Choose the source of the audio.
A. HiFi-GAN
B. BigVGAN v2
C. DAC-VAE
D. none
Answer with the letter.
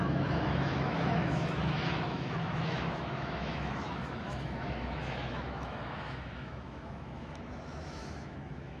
C